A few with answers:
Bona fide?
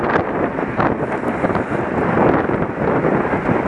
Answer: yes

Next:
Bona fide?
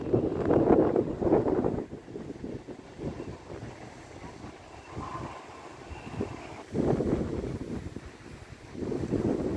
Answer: yes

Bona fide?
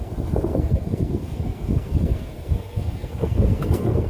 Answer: no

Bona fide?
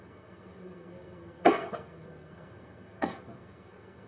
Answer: no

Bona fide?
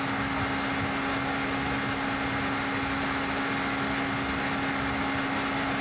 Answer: yes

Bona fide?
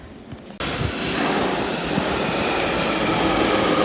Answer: yes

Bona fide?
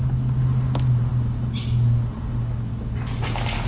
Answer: yes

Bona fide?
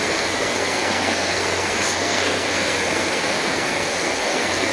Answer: no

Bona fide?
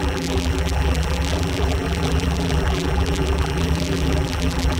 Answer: no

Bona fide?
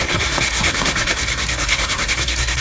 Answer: no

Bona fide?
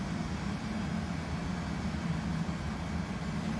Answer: yes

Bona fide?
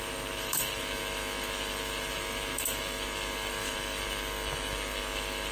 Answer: no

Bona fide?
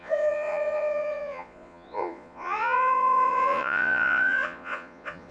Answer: no